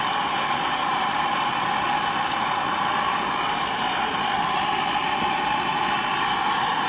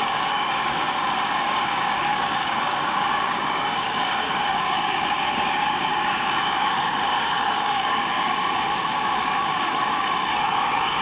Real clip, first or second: first